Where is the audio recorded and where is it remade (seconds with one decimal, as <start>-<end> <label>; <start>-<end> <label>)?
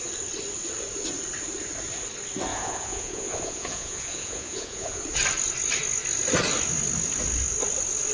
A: 0.0-2.5 recorded; 2.5-5.0 remade; 5.0-8.1 recorded